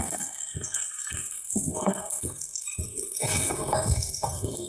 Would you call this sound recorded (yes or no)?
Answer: no